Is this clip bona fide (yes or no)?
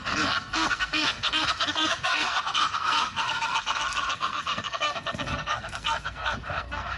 no